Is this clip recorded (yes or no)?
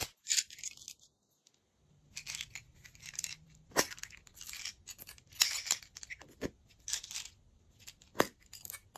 yes